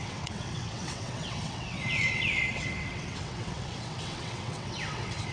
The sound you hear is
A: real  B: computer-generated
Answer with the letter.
B